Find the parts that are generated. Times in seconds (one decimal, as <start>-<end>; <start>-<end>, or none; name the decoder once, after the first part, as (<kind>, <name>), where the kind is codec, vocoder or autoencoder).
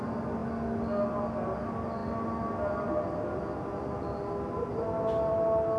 none